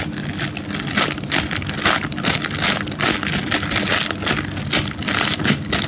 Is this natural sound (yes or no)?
yes